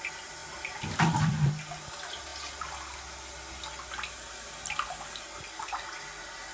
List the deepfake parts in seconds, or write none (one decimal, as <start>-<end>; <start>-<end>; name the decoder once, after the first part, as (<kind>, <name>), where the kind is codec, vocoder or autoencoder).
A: 0.4-1.5 (vocoder, BigVGAN v2)